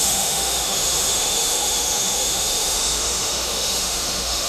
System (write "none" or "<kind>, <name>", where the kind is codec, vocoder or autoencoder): autoencoder, DAC-VAE